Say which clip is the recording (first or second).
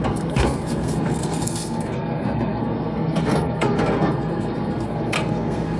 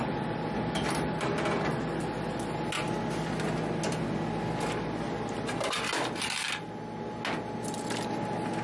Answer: second